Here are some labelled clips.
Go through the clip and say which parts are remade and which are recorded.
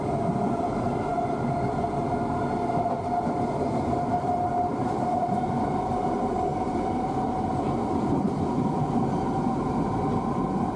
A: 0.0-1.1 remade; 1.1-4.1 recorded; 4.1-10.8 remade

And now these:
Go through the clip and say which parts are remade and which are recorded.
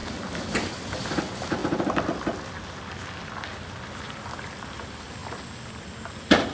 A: 0.0-1.6 remade; 1.6-2.8 recorded; 2.8-5.2 remade; 5.2-6.1 recorded; 6.1-6.5 remade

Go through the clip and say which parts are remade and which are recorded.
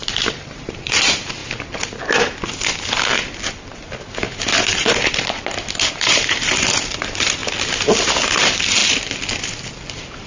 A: 0.0-1.4 remade; 1.4-5.9 recorded; 5.9-7.4 remade; 7.4-8.1 recorded; 8.1-8.8 remade; 8.8-9.7 recorded; 9.7-10.3 remade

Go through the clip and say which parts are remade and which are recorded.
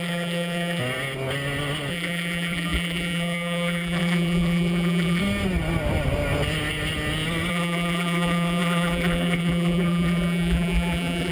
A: 0.0-0.8 remade; 0.8-1.9 recorded; 1.9-5.2 remade; 5.2-7.5 recorded; 7.5-11.3 remade